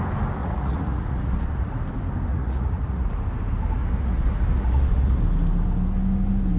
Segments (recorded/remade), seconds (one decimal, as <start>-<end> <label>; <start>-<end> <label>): 0.0-0.4 recorded; 0.4-1.7 remade; 1.7-2.3 recorded; 2.3-3.1 remade; 3.1-3.8 recorded; 3.8-5.2 remade; 5.2-6.6 recorded

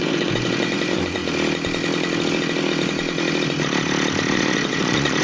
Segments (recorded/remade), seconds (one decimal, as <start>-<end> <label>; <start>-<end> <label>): 0.0-1.2 remade; 1.2-4.3 recorded; 4.3-5.2 remade

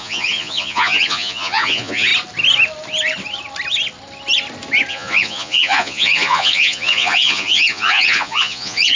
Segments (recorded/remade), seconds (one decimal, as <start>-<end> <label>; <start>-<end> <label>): 0.0-2.1 remade; 2.1-4.9 recorded; 4.9-9.0 remade

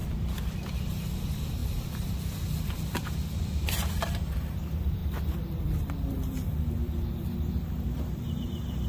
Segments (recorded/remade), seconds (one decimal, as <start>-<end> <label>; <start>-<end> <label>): 0.0-8.9 remade

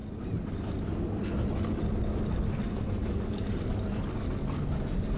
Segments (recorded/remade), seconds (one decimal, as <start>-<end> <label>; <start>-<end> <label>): 0.0-3.0 recorded; 3.0-3.5 remade; 3.5-5.2 recorded

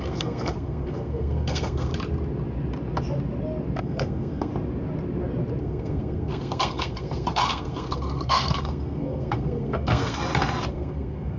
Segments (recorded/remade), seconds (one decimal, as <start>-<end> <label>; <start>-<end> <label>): 0.0-1.9 remade; 1.9-3.8 recorded; 3.8-4.5 remade; 4.5-5.6 recorded; 5.6-10.2 remade; 10.2-10.7 recorded; 10.7-11.4 remade